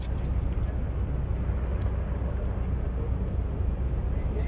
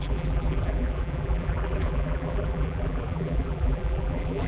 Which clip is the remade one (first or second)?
second